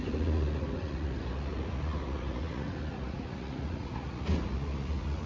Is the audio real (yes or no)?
no